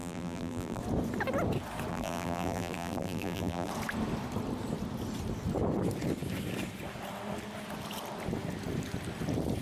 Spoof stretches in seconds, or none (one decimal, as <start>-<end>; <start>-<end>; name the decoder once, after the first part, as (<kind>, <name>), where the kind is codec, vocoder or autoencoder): 0.0-0.8 (vocoder, BigVGAN v2); 1.9-3.7